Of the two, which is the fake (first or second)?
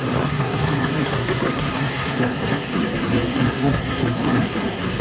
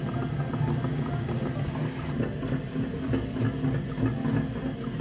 first